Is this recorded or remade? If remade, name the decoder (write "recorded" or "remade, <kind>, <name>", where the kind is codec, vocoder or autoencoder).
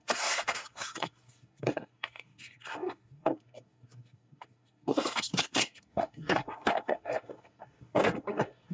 remade, codec, SNAC